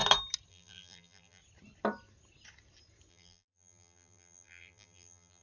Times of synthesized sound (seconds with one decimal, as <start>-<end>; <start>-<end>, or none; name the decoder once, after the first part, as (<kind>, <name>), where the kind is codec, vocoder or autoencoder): 0.5-1.4 (vocoder, BigVGAN v2); 3.1-5.4